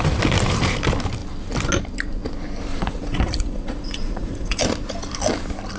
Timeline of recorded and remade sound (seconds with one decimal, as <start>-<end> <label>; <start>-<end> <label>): 0.0-2.7 recorded; 2.7-4.6 remade; 4.6-5.8 recorded